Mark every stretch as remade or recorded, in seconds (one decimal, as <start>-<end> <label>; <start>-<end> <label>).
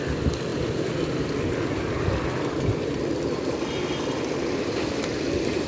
0.0-5.7 recorded